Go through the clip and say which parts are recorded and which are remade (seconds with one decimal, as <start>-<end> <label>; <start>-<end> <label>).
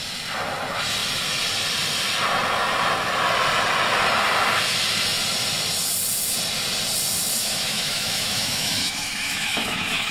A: 0.0-7.4 recorded; 7.4-10.1 remade